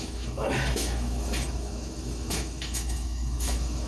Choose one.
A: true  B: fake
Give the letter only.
B